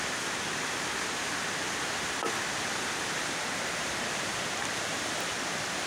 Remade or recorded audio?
recorded